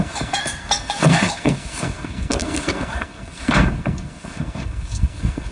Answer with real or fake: fake